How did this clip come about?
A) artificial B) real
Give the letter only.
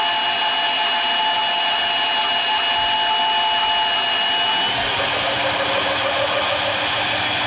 B